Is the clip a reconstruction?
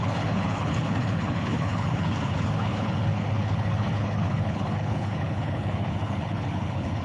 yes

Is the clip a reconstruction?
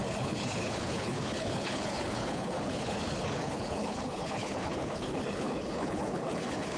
yes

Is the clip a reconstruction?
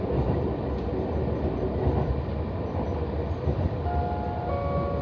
no